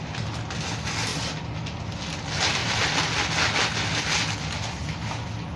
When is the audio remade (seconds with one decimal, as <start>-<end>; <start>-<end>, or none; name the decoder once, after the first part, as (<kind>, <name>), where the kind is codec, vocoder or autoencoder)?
2.6-3.1 (vocoder, BigVGAN v2)